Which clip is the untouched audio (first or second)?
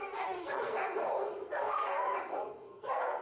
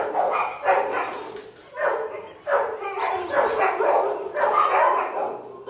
second